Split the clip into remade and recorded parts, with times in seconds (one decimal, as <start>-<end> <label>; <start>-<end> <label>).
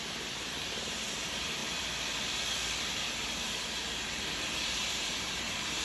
0.0-1.6 remade; 1.6-2.8 recorded; 2.8-5.8 remade